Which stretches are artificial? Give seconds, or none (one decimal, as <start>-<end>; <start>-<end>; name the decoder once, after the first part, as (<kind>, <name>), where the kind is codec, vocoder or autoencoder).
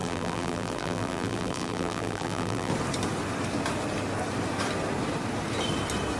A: 0.0-2.7 (vocoder, BigVGAN v2)